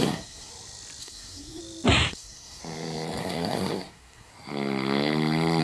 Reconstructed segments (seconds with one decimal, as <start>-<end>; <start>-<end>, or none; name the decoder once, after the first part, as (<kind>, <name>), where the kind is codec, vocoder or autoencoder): 0.0-0.5 (codec, SNAC); 1.0-1.6; 2.1-2.6; 3.2-4.3